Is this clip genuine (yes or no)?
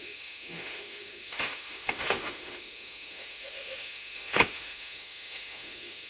no